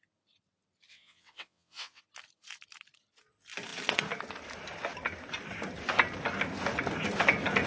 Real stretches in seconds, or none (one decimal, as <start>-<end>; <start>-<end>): 0.0-0.9; 2.0-7.7